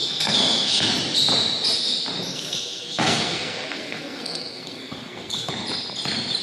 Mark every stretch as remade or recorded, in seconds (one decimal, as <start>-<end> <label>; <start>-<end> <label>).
0.0-0.9 remade; 0.9-2.3 recorded; 2.3-5.5 remade; 5.5-6.4 recorded